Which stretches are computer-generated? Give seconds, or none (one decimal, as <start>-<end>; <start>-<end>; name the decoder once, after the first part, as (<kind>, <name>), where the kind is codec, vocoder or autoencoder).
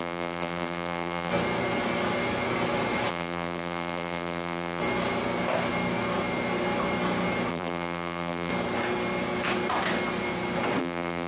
0.0-1.3 (vocoder, BigVGAN v2); 3.1-4.8; 7.5-8.5; 10.8-11.3